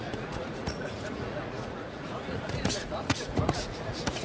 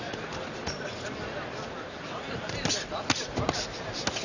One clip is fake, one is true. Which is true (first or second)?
second